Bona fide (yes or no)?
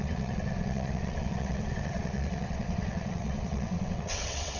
no